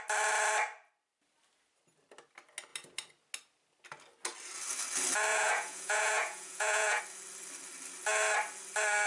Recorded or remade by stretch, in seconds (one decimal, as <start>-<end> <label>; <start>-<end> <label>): 0.0-5.3 recorded; 5.3-7.0 remade; 7.0-9.1 recorded